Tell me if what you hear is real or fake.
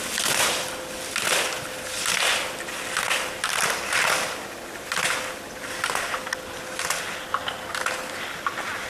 real